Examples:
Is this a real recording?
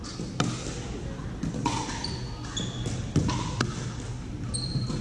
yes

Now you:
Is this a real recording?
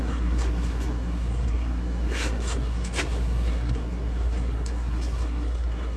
no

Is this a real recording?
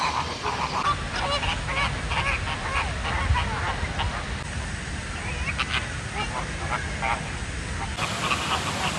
yes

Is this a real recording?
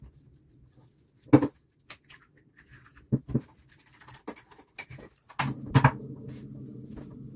yes